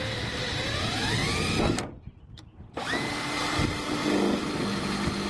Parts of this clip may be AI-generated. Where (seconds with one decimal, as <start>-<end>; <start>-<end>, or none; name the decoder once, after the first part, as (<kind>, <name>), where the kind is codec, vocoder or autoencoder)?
none